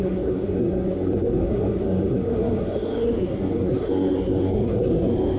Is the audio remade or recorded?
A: remade